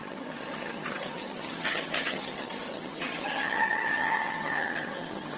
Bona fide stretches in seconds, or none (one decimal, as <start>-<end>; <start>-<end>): none

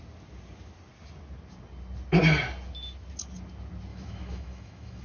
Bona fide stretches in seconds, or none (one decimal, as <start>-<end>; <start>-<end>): 0.0-3.9

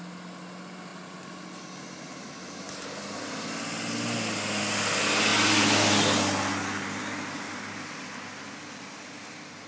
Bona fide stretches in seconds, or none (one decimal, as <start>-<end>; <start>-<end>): 0.0-9.7